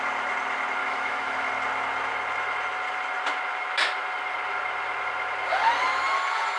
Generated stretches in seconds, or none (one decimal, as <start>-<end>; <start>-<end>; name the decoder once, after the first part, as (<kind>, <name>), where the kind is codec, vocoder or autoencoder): 0.8-1.5 (autoencoder, DAC-VAE)

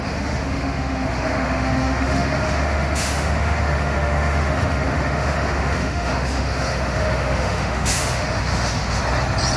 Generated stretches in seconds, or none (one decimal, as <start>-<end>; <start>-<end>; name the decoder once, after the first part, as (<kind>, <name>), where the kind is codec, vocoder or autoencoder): 0.0-9.0 (autoencoder, DAC-VAE)

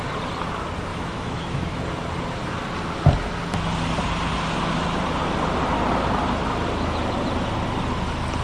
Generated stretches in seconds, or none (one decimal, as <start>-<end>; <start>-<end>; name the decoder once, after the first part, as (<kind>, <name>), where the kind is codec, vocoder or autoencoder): 0.9-1.8 (autoencoder, DAC-VAE)

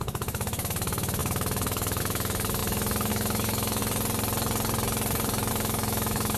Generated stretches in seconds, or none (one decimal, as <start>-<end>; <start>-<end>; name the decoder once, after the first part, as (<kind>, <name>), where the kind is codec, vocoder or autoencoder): 0.0-3.8 (autoencoder, DAC-VAE); 5.5-6.4